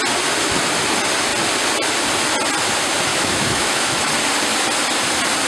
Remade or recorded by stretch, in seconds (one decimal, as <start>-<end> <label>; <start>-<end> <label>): 0.0-3.1 recorded; 3.1-4.1 remade; 4.1-5.5 recorded